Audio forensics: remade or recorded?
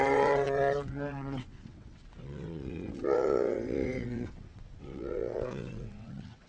remade